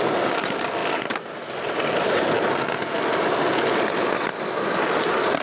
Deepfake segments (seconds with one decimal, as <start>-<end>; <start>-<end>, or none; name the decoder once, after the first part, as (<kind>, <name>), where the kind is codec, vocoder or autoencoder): none